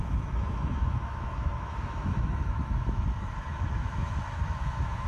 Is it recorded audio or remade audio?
remade